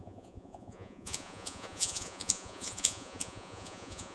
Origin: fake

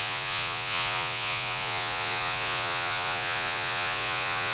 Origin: fake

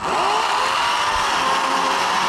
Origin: real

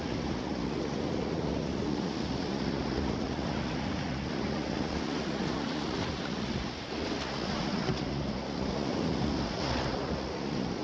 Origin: fake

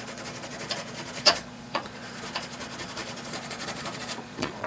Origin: fake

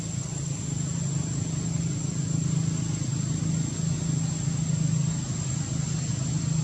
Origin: real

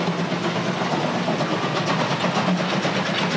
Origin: real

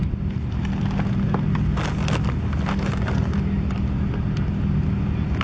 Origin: real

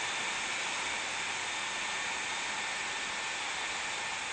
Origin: real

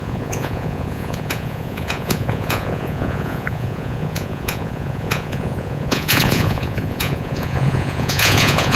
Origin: fake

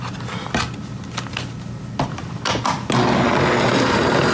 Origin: real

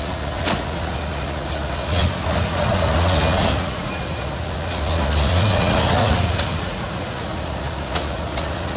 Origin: fake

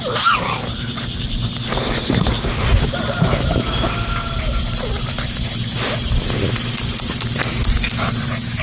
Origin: real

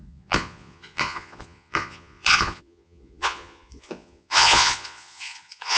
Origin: fake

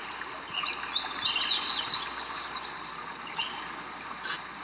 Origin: real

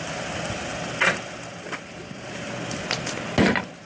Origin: real